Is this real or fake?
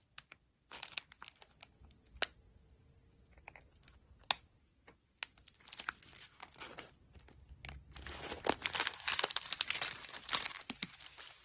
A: real